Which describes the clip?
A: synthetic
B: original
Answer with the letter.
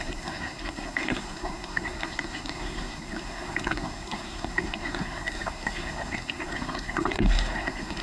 A